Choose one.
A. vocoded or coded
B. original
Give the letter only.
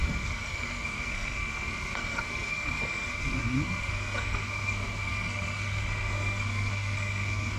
A